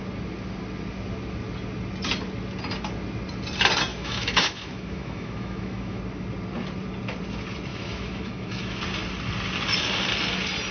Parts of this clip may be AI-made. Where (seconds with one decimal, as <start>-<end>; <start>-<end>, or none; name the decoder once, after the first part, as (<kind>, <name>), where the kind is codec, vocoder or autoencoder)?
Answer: 3.9-6.0 (autoencoder, DAC-VAE); 7.7-8.8